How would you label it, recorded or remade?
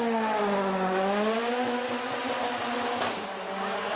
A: recorded